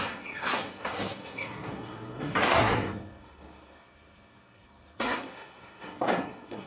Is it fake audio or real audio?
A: fake